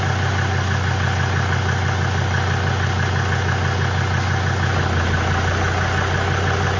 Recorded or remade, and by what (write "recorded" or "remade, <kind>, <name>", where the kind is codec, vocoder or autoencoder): recorded